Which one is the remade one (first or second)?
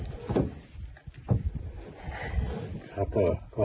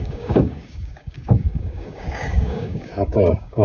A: second